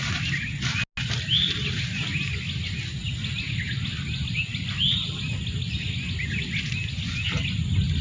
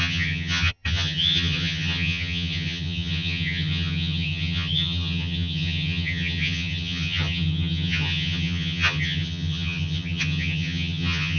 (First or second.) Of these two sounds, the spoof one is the second